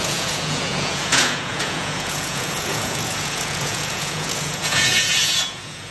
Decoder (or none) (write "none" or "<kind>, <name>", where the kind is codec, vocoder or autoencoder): vocoder, Vocos